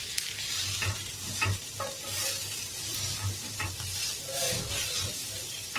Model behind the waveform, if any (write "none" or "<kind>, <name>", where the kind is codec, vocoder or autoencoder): vocoder, BigVGAN v2